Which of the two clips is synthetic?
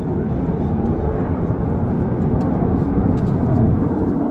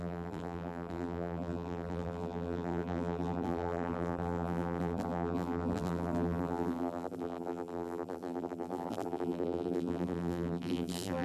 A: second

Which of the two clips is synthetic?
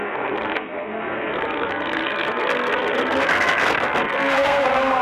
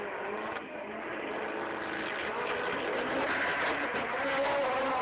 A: first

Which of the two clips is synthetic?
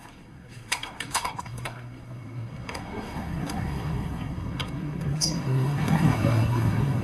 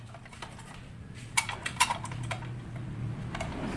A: first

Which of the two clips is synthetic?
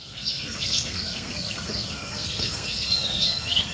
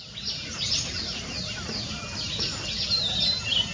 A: first